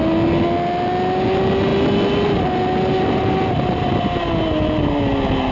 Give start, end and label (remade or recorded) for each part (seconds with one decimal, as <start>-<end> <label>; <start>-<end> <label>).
0.0-5.5 recorded